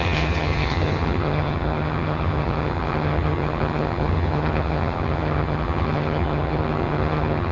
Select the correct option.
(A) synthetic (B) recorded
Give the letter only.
A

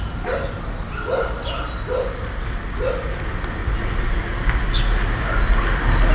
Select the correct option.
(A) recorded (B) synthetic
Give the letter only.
A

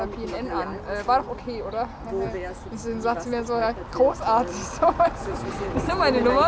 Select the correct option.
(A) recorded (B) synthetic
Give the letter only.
A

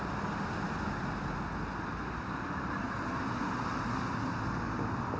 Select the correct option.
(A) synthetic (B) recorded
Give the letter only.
B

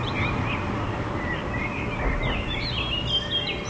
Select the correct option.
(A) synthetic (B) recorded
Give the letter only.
B